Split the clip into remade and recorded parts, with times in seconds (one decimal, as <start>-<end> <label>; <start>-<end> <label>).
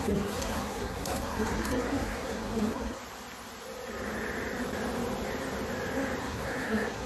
0.0-3.0 remade; 3.0-6.2 recorded; 6.2-7.1 remade